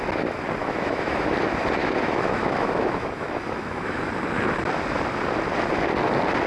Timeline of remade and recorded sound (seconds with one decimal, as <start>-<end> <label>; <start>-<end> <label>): 0.0-0.6 recorded; 0.6-1.3 remade; 1.3-1.8 recorded; 1.8-4.1 remade; 4.1-6.5 recorded